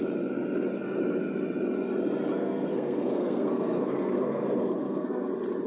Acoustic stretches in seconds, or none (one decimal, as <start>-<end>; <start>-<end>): 0.0-2.3; 5.3-5.7